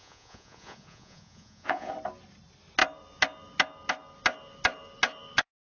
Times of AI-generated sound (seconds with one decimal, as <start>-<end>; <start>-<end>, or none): 0.0-1.9

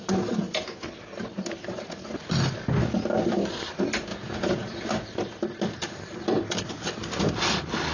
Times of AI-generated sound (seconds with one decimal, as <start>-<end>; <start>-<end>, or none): 4.1-4.9

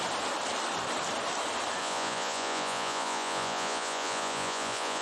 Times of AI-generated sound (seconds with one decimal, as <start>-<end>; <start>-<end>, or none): 1.8-5.0